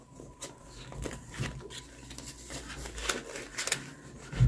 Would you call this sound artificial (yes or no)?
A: no